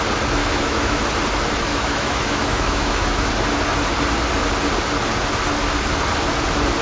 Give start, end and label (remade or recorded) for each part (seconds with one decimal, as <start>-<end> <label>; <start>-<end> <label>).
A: 0.0-0.4 recorded; 0.4-1.0 remade; 1.0-1.7 recorded; 1.7-3.3 remade; 3.3-6.8 recorded